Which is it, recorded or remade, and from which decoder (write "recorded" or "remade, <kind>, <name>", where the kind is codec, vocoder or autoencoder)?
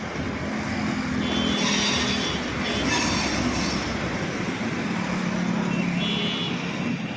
recorded